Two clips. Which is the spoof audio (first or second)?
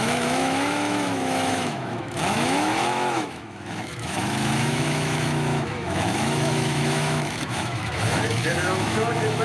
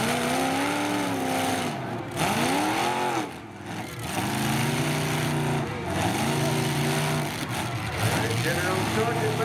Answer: first